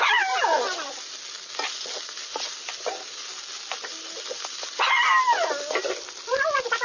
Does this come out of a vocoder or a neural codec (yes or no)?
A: no